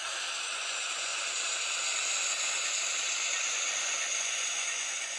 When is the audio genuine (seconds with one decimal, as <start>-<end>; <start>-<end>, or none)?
0.0-0.5; 1.1-4.2